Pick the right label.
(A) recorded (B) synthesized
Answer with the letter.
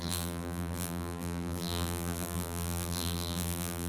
B